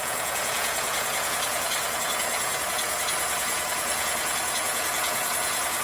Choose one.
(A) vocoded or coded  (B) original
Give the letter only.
A